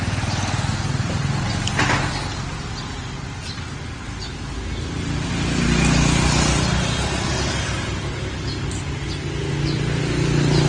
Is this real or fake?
real